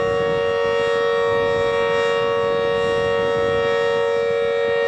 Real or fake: real